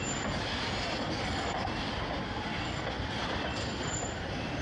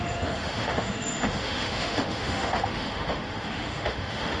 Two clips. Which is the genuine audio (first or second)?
first